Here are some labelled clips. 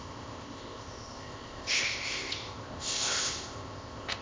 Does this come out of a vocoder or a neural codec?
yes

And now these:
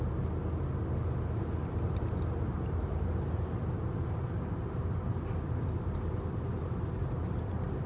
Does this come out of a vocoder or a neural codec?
no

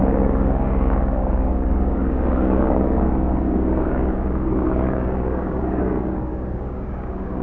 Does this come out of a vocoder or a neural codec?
yes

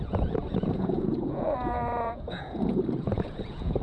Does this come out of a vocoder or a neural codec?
yes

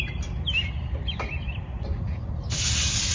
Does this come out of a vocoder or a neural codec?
no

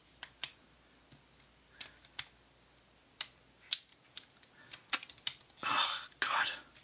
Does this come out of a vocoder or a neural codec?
no